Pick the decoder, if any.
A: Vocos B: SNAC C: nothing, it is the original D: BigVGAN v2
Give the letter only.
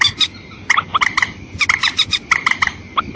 C